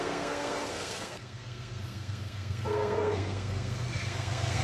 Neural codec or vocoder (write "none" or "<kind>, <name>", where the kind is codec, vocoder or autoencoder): codec, SNAC